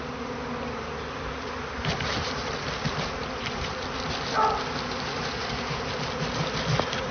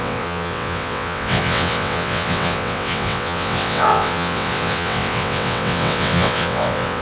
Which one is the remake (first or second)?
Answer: second